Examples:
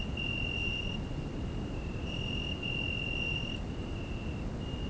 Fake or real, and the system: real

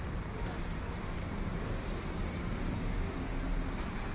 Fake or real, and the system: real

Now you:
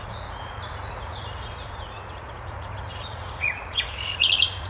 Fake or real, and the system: fake, vocoder, Vocos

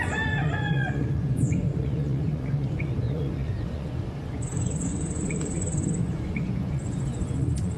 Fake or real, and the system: fake, vocoder, Vocos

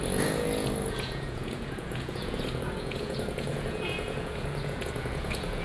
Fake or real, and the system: fake, vocoder, Vocos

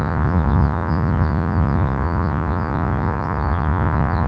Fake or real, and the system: fake, vocoder, Vocos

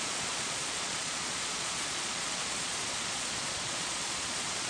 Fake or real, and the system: fake, vocoder, Vocos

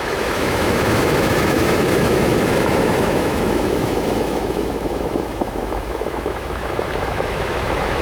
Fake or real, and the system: fake, autoencoder, DAC-VAE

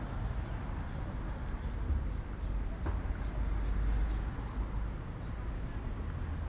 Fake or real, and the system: real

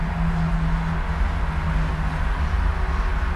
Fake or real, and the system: real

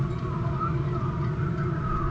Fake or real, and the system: real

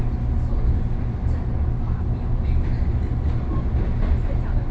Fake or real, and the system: real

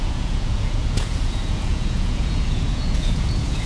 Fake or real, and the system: fake, vocoder, Vocos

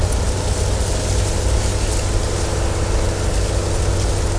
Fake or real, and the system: real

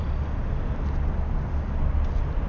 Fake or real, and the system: real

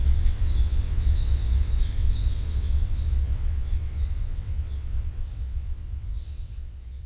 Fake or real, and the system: fake, vocoder, WaveNeXt